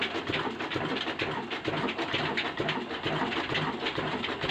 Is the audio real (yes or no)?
yes